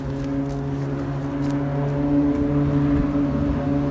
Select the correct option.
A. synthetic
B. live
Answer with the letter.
B